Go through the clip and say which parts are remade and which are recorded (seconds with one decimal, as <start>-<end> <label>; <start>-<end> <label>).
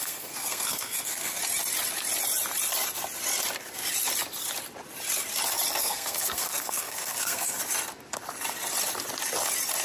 0.0-1.4 remade; 1.4-5.8 recorded; 5.8-7.6 remade; 7.6-9.8 recorded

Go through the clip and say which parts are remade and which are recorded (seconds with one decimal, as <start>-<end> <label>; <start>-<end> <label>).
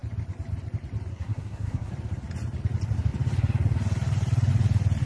0.0-1.1 recorded; 1.1-1.9 remade; 1.9-5.1 recorded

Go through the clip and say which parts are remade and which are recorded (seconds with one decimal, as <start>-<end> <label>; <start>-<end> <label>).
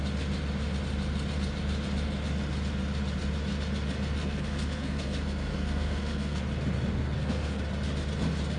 0.0-4.2 recorded; 4.2-6.4 remade; 6.4-6.9 recorded; 6.9-7.6 remade; 7.6-8.6 recorded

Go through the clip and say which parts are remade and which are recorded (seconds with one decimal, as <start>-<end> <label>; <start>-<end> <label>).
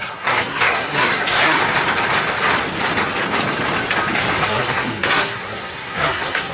0.0-1.6 remade; 1.6-4.5 recorded; 4.5-6.5 remade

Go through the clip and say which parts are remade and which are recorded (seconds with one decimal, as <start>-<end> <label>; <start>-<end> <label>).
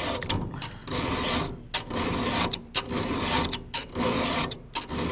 0.0-5.1 recorded